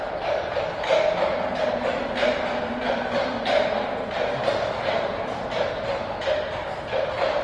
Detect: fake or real real